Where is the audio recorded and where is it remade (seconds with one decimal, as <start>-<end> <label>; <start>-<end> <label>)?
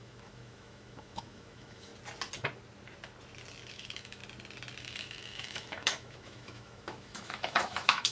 0.0-1.9 remade; 1.9-3.7 recorded; 3.7-4.2 remade; 4.2-4.8 recorded; 4.8-8.1 remade